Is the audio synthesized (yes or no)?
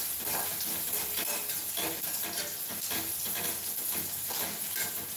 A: no